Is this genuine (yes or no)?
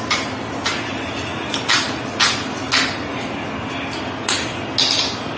yes